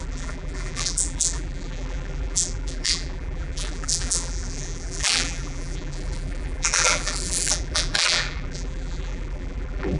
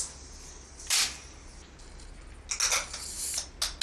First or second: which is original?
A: second